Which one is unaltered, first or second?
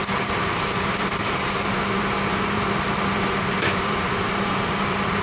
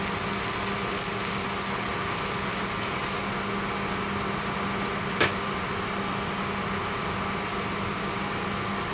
second